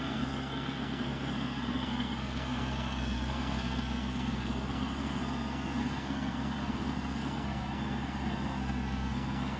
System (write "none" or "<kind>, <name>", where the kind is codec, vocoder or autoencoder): codec, SNAC